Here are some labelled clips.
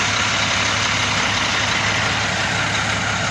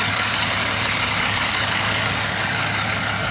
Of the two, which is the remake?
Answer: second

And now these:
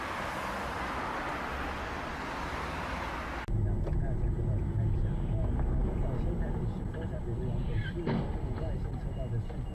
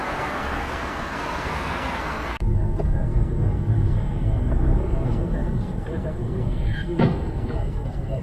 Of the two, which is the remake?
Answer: second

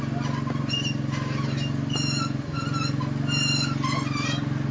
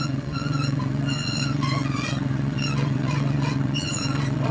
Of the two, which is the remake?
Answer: second